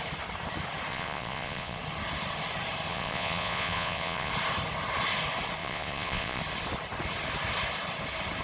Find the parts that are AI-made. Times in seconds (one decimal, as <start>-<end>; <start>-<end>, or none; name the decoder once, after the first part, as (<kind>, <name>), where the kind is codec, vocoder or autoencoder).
0.9-1.8 (vocoder, Vocos); 2.9-4.3; 5.6-6.4